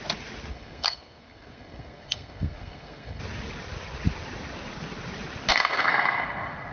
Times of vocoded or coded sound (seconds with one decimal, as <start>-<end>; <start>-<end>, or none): 0.5-3.2; 5.5-6.7